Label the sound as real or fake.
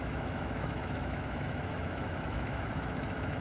fake